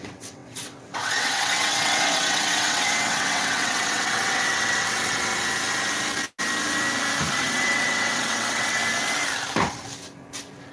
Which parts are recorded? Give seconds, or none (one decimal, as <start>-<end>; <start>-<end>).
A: 5.3-7.4; 8.8-10.7